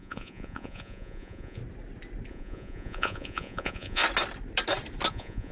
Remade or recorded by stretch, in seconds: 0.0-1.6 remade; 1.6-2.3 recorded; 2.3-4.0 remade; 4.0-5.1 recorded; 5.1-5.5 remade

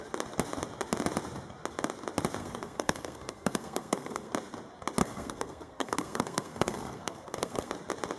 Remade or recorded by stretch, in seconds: 0.0-2.4 recorded; 2.4-4.3 remade; 4.3-5.0 recorded; 5.0-7.7 remade; 7.7-8.2 recorded

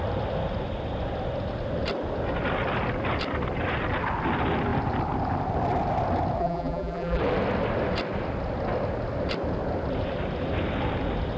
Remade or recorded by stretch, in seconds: 0.0-6.4 recorded; 6.4-7.2 remade; 7.2-11.4 recorded

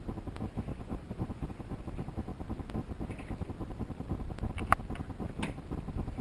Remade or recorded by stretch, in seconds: 0.0-0.7 recorded; 0.7-1.8 remade; 1.8-6.2 recorded